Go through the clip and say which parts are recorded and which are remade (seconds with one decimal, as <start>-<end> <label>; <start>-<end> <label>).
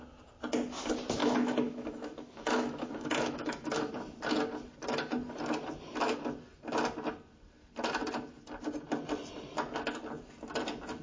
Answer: 0.0-1.2 recorded; 1.2-3.9 remade; 3.9-11.0 recorded